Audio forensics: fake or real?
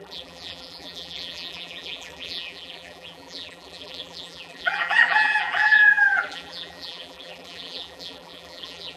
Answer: fake